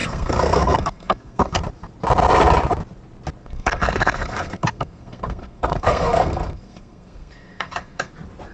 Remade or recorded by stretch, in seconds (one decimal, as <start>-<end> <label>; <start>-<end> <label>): 0.0-1.6 remade; 1.6-3.4 recorded; 3.4-8.1 remade; 8.1-8.5 recorded